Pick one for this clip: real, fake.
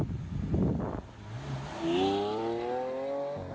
real